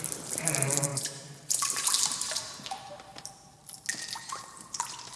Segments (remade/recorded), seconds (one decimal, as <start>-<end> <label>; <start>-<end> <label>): 0.0-3.6 remade; 3.6-4.3 recorded; 4.3-5.2 remade